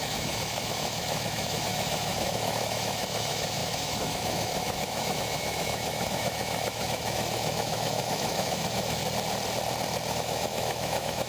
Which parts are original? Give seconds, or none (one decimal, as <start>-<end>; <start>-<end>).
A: 9.0-10.1